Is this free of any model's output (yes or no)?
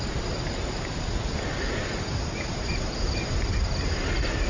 yes